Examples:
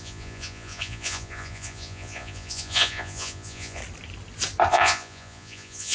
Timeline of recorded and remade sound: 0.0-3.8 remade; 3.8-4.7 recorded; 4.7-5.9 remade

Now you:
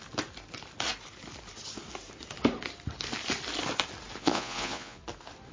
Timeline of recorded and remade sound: 0.0-4.2 recorded; 4.2-5.0 remade; 5.0-5.5 recorded